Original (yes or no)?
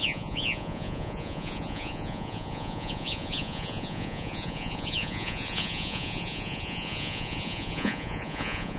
no